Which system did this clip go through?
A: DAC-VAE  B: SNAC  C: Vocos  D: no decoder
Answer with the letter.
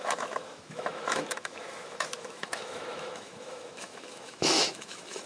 A